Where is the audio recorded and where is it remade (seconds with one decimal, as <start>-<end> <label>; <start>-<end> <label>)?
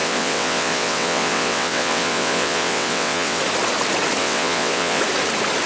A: 0.0-3.4 remade; 3.4-4.2 recorded; 4.2-5.0 remade; 5.0-5.7 recorded